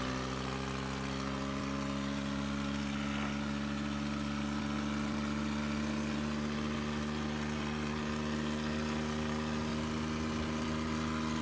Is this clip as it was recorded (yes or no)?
yes